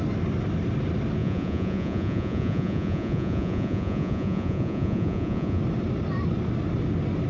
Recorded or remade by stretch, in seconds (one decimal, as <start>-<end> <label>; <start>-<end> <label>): 0.0-1.2 recorded; 1.2-5.6 remade; 5.6-7.3 recorded

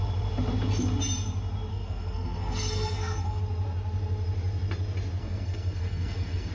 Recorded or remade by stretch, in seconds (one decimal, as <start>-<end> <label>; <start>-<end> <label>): 0.0-1.7 recorded; 1.7-3.4 remade; 3.4-5.2 recorded; 5.2-6.5 remade

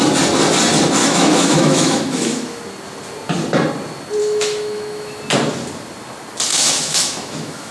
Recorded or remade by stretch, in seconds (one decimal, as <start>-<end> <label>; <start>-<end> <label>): 0.0-1.0 recorded; 1.0-2.6 remade; 2.6-4.2 recorded; 4.2-5.2 remade; 5.2-6.5 recorded; 6.5-7.7 remade